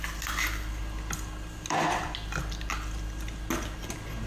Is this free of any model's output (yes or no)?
yes